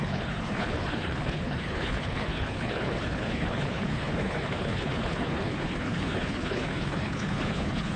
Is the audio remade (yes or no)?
yes